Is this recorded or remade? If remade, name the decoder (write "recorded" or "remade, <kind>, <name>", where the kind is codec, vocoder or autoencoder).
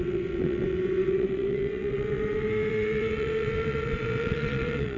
remade, vocoder, WaveNeXt